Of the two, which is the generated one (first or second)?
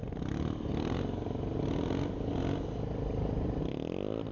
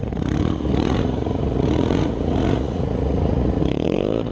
second